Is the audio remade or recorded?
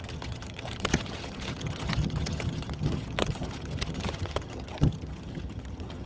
remade